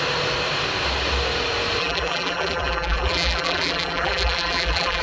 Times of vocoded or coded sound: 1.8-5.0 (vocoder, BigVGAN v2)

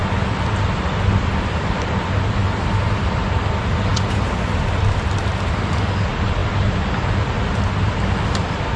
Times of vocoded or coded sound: none

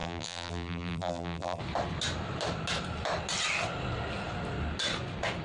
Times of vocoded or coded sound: 0.0-1.6 (vocoder, BigVGAN v2)

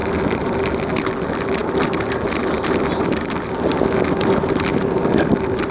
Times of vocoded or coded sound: 0.0-0.6 (vocoder, BigVGAN v2); 4.7-5.7

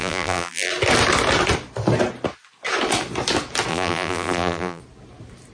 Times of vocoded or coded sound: 0.0-0.7 (vocoder, BigVGAN v2); 3.7-4.8

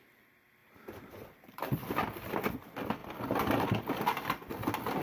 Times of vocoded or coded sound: 0.6-2.3 (vocoder, BigVGAN v2)